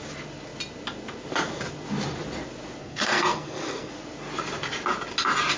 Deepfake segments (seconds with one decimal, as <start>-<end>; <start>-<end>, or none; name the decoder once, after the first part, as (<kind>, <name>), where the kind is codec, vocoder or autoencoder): 2.8-3.9 (codec, SNAC)

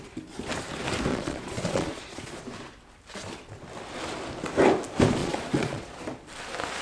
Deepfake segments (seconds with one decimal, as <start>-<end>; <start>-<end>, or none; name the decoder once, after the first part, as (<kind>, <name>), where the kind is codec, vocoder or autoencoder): 1.1-2.4 (vocoder, Vocos); 5.2-6.0

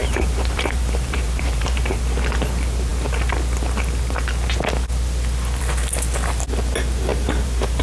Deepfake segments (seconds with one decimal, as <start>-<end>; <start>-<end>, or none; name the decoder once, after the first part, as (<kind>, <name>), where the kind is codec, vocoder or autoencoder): 0.0-2.0 (vocoder, BigVGAN v2); 7.1-7.8